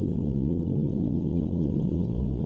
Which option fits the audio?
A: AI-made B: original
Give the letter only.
A